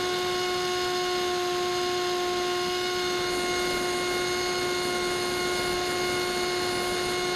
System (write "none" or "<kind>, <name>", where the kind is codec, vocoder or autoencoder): none